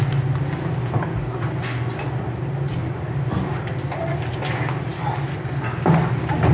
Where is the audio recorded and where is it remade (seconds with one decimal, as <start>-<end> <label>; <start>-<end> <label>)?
0.0-6.5 recorded